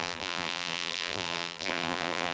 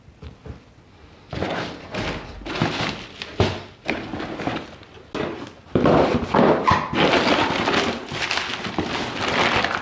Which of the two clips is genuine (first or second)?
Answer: second